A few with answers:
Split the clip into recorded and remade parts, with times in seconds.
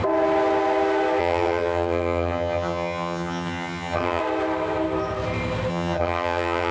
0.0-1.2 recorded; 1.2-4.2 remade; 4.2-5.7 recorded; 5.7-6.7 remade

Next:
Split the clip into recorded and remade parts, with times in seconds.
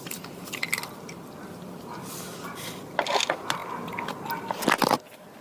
0.0-5.4 recorded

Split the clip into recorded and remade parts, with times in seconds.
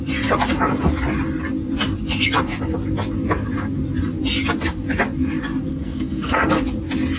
0.0-5.7 recorded; 5.7-6.5 remade; 6.5-7.2 recorded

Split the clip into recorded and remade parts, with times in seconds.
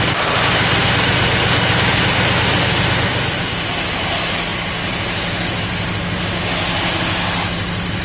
0.0-8.0 recorded